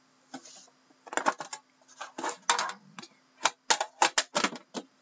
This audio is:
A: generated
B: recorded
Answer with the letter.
B